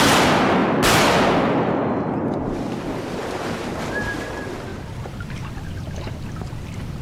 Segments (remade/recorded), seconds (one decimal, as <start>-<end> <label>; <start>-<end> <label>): 0.0-3.2 recorded; 3.2-3.7 remade; 3.7-4.7 recorded; 4.7-5.5 remade; 5.5-7.0 recorded